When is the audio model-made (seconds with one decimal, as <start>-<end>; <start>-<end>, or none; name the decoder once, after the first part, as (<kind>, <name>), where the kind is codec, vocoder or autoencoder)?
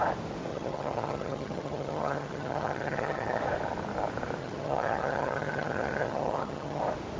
0.5-3.4 (vocoder, HiFi-GAN); 4.4-6.8